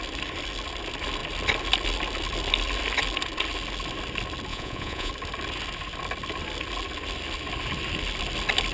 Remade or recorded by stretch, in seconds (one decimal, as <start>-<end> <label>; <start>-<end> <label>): 0.0-4.5 recorded; 4.5-5.1 remade; 5.1-8.7 recorded